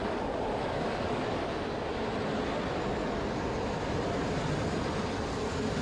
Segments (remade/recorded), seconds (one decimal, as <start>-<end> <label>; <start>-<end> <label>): 0.0-1.4 remade; 1.4-5.8 recorded